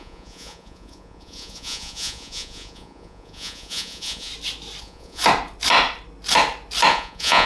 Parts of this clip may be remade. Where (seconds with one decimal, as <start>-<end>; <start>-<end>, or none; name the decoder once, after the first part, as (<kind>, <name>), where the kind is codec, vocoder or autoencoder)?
0.0-4.3 (vocoder, Vocos); 4.8-5.2; 6.9-7.5